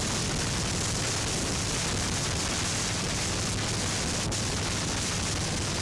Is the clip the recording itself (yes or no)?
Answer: yes